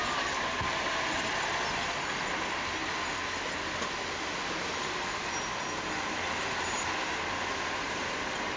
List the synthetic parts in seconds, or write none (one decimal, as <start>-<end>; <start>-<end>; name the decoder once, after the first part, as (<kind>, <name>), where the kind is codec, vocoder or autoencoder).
none